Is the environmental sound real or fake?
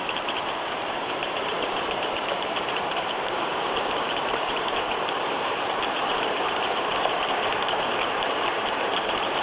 fake